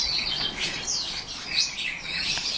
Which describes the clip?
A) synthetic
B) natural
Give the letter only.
A